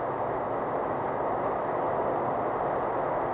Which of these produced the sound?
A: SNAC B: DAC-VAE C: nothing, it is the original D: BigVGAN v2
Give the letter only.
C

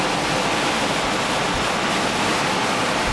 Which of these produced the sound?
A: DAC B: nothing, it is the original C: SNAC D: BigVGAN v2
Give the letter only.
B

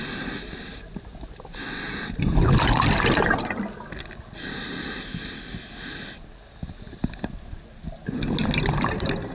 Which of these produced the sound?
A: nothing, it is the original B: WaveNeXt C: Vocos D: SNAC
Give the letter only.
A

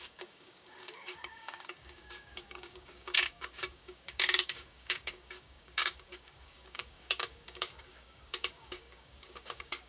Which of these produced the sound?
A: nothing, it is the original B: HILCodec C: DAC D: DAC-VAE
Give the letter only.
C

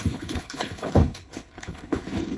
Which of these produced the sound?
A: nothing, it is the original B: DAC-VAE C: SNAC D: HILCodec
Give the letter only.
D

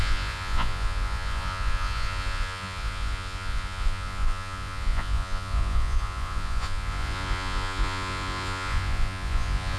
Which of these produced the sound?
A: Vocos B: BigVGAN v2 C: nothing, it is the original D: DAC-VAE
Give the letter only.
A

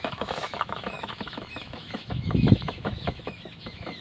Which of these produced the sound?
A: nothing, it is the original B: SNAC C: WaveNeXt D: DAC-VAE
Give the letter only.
D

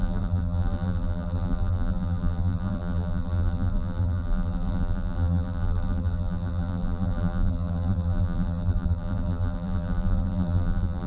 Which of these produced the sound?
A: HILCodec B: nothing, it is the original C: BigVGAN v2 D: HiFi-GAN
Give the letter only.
C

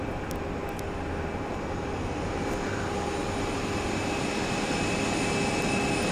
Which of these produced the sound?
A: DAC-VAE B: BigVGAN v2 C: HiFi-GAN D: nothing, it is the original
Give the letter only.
D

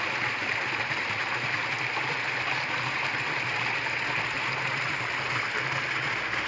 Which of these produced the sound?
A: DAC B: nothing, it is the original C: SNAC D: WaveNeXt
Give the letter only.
B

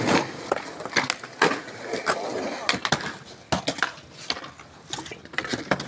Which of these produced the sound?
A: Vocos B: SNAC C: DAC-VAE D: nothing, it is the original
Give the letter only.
D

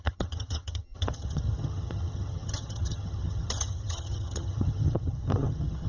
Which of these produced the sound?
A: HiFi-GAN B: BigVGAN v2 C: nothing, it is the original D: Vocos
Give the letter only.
A